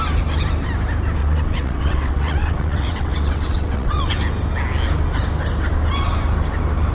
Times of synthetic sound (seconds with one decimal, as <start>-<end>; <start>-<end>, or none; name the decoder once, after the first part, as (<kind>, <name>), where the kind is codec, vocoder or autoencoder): 1.2-4.0 (vocoder, WaveNeXt)